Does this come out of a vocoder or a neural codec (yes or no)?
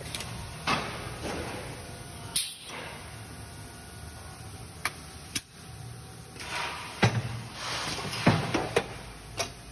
no